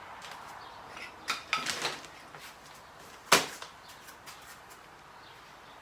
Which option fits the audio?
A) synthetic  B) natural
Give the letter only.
B